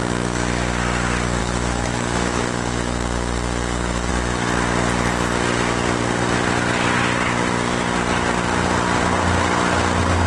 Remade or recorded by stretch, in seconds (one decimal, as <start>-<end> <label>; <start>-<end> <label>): 0.0-1.4 recorded; 1.4-4.1 remade; 4.1-10.3 recorded